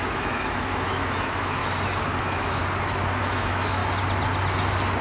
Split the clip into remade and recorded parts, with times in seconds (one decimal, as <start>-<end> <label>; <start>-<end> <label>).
0.0-1.6 remade; 1.6-2.2 recorded; 2.2-2.6 remade; 2.6-3.2 recorded; 3.2-3.8 remade; 3.8-5.0 recorded